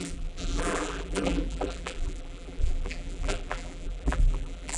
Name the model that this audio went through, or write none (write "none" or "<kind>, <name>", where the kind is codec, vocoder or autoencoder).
vocoder, BigVGAN v2